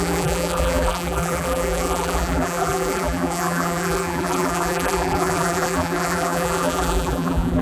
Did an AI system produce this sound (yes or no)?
yes